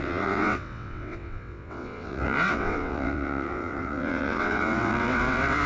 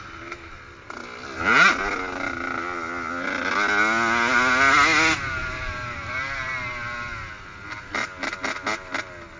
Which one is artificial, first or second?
first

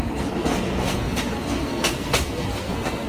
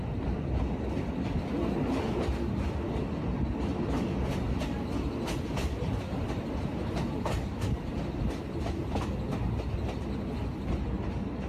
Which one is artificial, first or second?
first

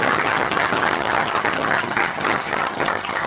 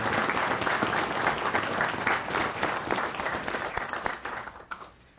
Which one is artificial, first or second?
first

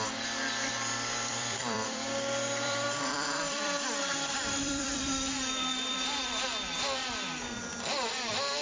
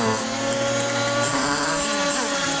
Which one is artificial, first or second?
first